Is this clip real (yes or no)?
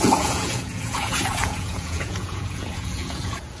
no